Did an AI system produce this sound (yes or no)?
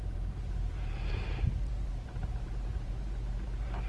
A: yes